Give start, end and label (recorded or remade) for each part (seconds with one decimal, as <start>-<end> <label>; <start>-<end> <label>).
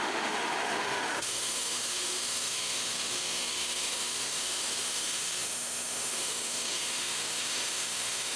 0.0-8.4 remade